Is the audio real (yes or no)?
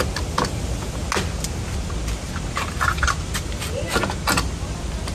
yes